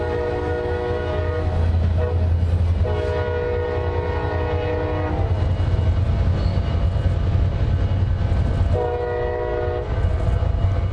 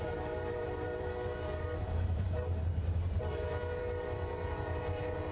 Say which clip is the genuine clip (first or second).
first